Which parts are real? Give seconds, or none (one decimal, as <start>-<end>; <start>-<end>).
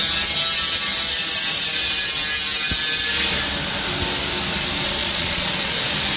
0.0-5.0; 5.8-6.2